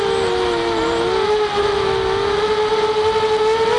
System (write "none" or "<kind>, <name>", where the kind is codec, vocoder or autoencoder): none